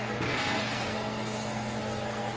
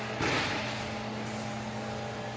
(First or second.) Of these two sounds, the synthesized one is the first